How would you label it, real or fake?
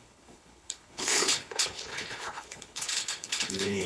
fake